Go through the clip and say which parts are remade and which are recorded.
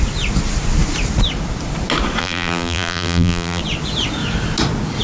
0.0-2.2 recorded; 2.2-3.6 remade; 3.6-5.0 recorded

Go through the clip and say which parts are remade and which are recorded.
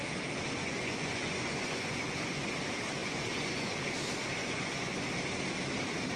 0.0-0.6 recorded; 0.6-2.5 remade; 2.5-3.0 recorded; 3.0-3.8 remade; 3.8-4.4 recorded; 4.4-5.1 remade; 5.1-6.2 recorded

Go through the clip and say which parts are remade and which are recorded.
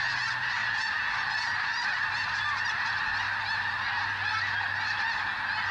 0.0-5.7 recorded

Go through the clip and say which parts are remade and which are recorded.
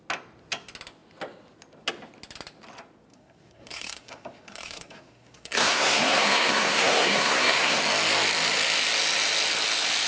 0.0-3.1 recorded; 3.1-7.8 remade; 7.8-10.1 recorded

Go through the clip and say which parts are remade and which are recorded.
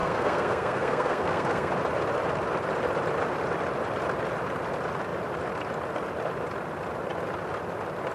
0.0-1.7 remade; 1.7-8.1 recorded